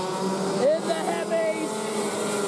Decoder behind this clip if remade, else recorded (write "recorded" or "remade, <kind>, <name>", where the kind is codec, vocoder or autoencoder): recorded